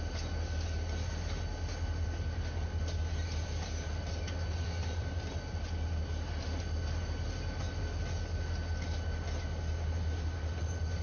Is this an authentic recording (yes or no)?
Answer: yes